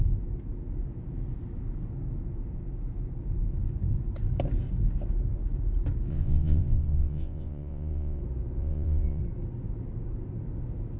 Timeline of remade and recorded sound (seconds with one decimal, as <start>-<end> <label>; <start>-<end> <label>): 0.0-6.1 recorded; 6.1-8.2 remade; 8.2-8.6 recorded; 8.6-9.2 remade; 9.2-11.0 recorded